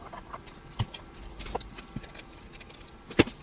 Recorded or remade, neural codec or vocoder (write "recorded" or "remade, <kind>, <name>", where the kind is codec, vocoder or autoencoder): recorded